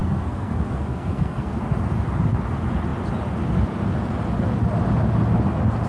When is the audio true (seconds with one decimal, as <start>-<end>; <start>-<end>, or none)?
1.6-5.9